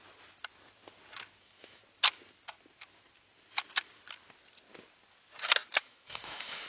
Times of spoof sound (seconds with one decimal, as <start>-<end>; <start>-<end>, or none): 1.4-1.8; 5.8-6.7